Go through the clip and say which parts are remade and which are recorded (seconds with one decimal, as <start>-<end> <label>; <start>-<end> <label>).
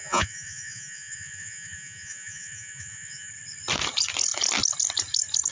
0.0-3.3 remade; 3.3-5.5 recorded